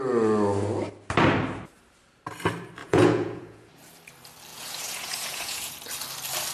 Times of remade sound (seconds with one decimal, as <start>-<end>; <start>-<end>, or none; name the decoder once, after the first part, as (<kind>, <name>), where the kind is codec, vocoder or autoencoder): 2.8-3.7 (vocoder, Vocos); 4.5-5.7